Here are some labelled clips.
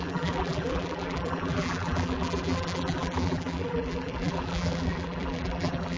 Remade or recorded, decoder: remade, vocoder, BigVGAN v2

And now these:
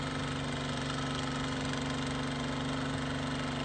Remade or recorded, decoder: recorded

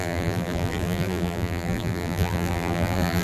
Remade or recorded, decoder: remade, vocoder, BigVGAN v2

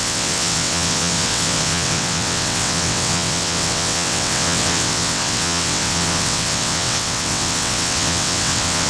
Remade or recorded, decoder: remade, vocoder, WaveNeXt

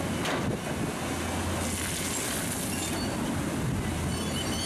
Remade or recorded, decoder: recorded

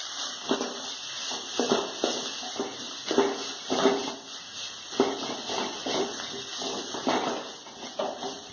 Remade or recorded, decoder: recorded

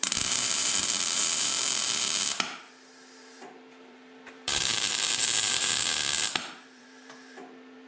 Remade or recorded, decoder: remade, vocoder, BigVGAN v2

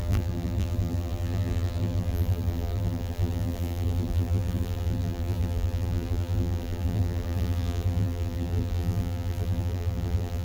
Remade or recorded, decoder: remade, vocoder, BigVGAN v2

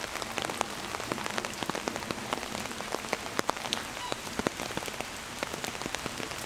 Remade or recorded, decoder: recorded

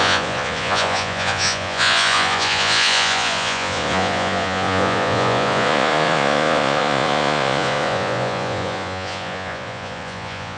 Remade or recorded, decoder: remade, vocoder, Vocos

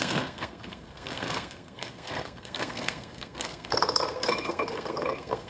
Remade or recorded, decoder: remade, codec, SNAC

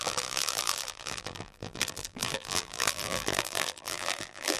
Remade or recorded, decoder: remade, vocoder, BigVGAN v2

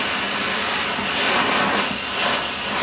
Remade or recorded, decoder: recorded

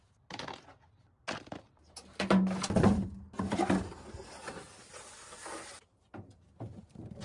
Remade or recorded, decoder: recorded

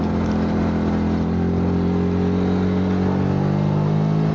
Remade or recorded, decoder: recorded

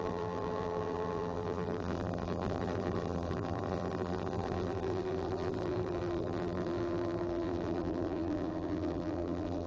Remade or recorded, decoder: remade, vocoder, BigVGAN v2